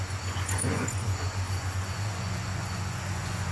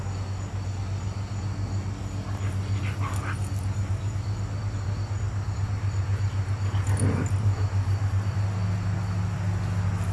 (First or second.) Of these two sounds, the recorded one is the second